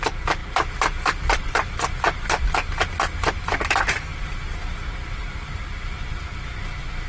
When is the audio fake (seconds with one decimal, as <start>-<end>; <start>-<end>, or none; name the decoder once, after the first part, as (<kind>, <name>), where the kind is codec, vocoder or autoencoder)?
none